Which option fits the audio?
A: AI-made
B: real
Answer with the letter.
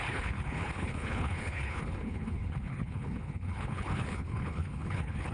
A